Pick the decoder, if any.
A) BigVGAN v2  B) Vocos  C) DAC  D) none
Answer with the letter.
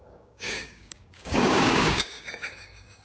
C